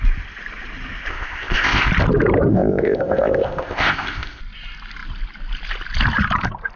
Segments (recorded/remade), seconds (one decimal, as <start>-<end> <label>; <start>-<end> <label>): 0.0-1.1 recorded; 1.1-1.9 remade; 1.9-2.5 recorded; 2.5-4.4 remade; 4.4-6.8 recorded